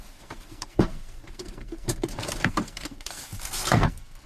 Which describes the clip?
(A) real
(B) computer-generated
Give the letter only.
B